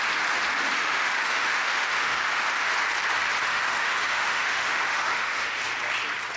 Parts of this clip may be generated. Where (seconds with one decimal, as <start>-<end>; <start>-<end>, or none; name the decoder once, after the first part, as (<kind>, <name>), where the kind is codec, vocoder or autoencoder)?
0.8-2.7 (autoencoder, DAC-VAE); 3.5-5.6